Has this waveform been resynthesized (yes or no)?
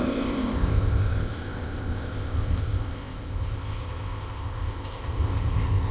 yes